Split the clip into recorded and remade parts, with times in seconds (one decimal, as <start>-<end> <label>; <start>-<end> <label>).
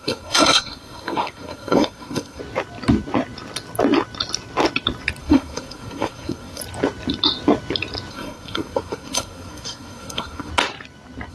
0.0-2.4 remade; 2.4-5.2 recorded; 5.2-6.6 remade; 6.6-8.1 recorded; 8.1-10.5 remade; 10.5-11.3 recorded